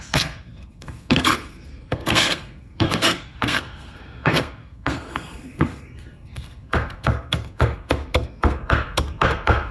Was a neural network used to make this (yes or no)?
yes